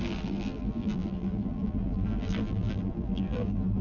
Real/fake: fake